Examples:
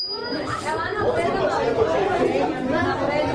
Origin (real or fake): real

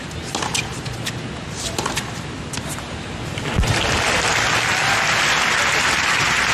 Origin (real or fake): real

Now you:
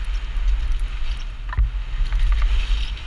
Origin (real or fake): real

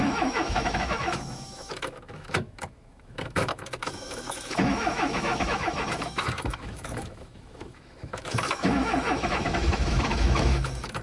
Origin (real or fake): fake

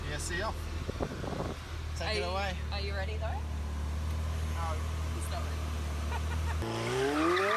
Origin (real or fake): real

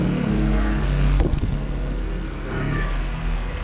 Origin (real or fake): fake